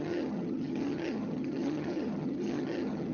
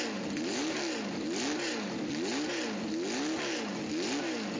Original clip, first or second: second